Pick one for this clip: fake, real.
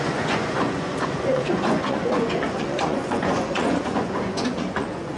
fake